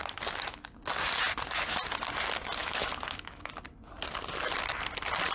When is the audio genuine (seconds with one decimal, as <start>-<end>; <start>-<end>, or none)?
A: 0.0-2.6; 3.5-5.3